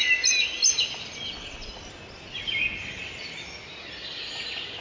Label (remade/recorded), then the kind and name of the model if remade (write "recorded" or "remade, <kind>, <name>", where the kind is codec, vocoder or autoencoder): recorded